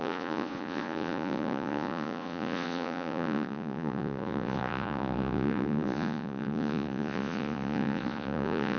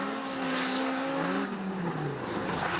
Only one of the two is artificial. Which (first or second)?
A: first